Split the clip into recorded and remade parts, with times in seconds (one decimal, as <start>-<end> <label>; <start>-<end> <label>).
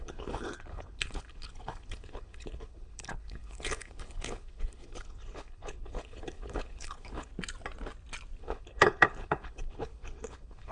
0.0-7.3 remade; 7.3-8.4 recorded; 8.4-10.7 remade